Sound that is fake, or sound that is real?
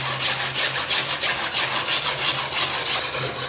real